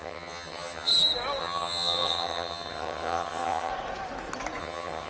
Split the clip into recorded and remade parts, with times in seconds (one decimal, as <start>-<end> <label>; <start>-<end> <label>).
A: 0.0-0.9 remade; 0.9-1.4 recorded; 1.4-3.7 remade; 3.7-4.6 recorded; 4.6-5.1 remade